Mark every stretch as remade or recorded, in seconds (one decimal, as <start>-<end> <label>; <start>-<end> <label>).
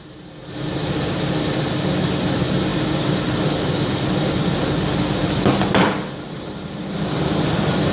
0.0-7.9 recorded